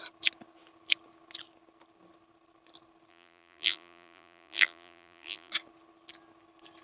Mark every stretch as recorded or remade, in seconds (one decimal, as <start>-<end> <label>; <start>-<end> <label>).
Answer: 0.0-3.1 recorded; 3.1-5.5 remade; 5.5-6.8 recorded